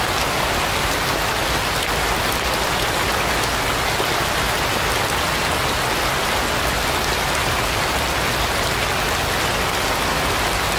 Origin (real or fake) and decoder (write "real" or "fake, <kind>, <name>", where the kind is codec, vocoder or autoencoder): real